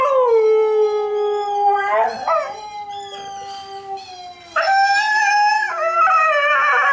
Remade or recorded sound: recorded